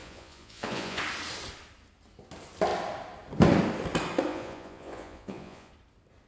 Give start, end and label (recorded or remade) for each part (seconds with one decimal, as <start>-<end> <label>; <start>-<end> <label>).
0.0-1.0 remade; 1.0-4.3 recorded; 4.3-5.7 remade; 5.7-6.3 recorded